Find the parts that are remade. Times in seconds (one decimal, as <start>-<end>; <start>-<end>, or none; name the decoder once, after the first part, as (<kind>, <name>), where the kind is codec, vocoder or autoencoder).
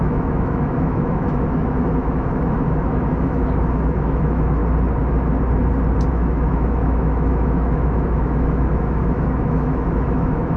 0.0-4.6 (autoencoder, DAC-VAE); 6.1-10.6